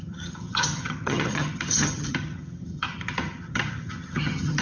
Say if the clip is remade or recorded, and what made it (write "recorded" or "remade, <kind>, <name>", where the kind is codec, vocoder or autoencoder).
remade, vocoder, HiFi-GAN